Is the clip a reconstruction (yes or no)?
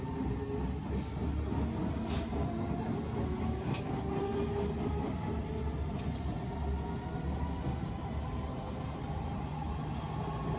no